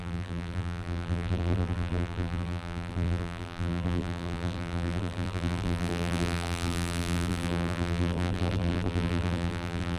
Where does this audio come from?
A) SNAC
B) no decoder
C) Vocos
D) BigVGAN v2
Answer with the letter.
D